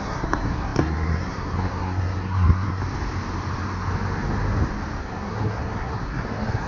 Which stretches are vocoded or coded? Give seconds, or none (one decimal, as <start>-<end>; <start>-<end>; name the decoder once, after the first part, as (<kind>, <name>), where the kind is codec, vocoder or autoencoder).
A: 0.0-2.8 (codec, SNAC); 5.0-6.7